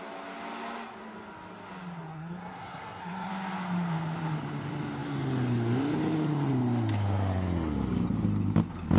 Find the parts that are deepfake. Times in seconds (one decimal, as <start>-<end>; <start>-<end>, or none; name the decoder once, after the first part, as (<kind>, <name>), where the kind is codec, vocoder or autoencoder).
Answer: 2.1-3.3 (codec, SNAC)